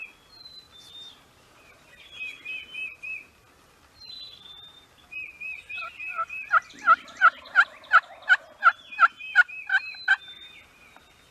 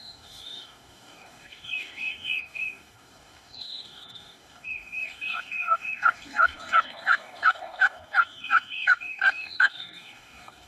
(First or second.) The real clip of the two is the first